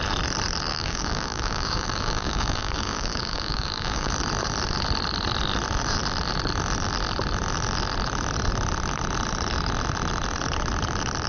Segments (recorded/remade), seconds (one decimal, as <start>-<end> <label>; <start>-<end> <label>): 0.0-0.7 recorded; 0.7-4.1 remade; 4.1-11.3 recorded